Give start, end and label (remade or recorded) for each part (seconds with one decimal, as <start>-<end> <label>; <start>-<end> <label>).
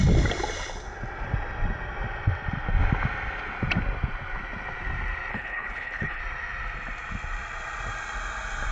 0.0-5.3 recorded; 5.3-6.2 remade; 6.2-8.7 recorded